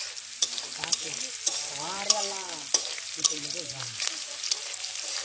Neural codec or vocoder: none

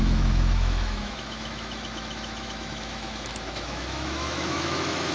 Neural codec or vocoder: autoencoder, DAC-VAE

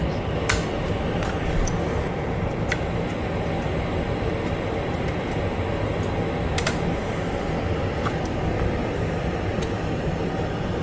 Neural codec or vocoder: vocoder, BigVGAN v2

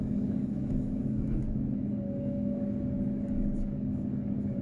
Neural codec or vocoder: codec, DAC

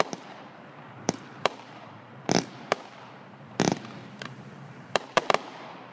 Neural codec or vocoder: vocoder, BigVGAN v2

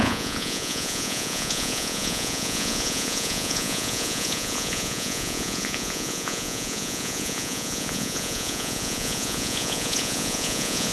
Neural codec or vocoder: vocoder, Vocos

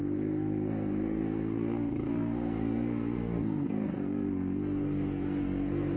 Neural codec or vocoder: codec, SNAC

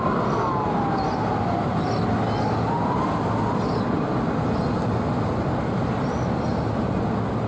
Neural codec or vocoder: none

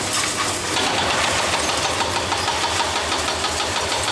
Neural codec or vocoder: none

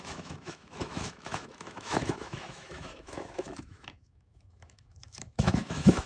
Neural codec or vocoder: autoencoder, DAC-VAE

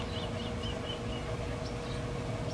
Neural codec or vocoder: none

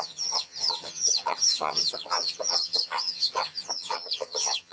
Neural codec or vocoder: vocoder, HiFi-GAN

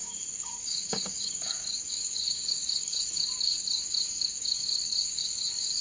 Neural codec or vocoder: codec, DAC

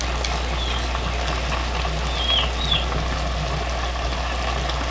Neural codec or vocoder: none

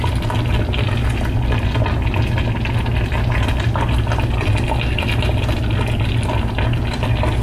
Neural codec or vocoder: none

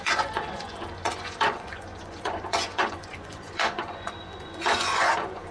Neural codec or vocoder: vocoder, Vocos